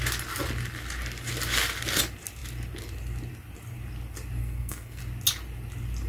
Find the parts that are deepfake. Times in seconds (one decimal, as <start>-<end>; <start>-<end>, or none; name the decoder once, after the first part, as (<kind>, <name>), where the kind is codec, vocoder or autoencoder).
4.4-5.0 (codec, SNAC)